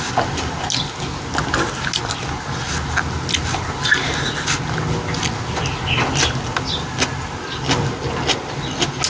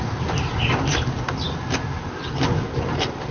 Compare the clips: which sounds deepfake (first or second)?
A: second